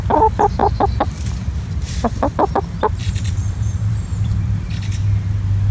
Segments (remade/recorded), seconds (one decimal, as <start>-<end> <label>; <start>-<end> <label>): 0.0-3.0 recorded; 3.0-4.7 remade; 4.7-5.7 recorded